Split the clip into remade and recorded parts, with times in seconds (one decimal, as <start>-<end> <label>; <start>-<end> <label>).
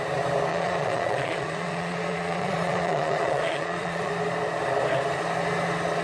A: 0.0-0.5 recorded; 0.5-4.1 remade; 4.1-6.0 recorded